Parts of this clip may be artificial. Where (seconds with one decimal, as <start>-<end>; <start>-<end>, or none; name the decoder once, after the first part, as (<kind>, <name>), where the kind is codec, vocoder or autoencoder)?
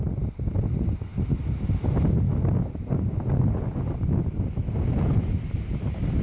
none